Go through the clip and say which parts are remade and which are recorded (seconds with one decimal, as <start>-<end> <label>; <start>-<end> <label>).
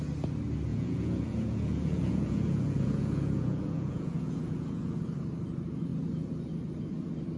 0.0-0.7 recorded; 0.7-5.0 remade; 5.0-7.4 recorded